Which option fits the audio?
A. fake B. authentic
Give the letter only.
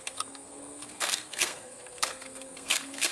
A